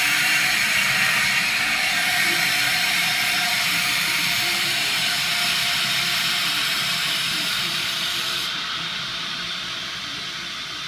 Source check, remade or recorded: remade